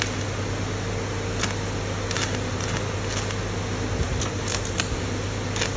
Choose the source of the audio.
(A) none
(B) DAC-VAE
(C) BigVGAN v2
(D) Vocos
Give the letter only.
A